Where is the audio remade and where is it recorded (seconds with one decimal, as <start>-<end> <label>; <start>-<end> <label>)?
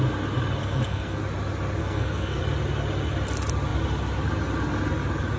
0.0-0.6 recorded; 0.6-1.2 remade; 1.2-1.8 recorded; 1.8-2.4 remade; 2.4-5.4 recorded